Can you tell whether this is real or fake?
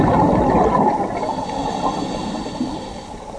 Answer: real